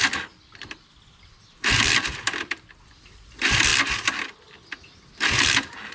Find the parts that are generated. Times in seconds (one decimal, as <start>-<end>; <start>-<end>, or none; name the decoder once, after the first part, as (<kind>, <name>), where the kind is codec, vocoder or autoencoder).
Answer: 0.0-3.7 (vocoder, BigVGAN v2); 4.8-5.9